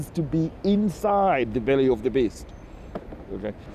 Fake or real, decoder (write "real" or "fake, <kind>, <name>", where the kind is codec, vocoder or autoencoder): real